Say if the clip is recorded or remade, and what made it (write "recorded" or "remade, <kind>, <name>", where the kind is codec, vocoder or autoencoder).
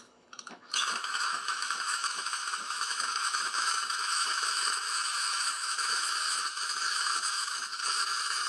remade, autoencoder, DAC-VAE